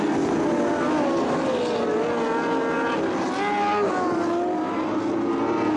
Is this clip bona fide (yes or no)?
yes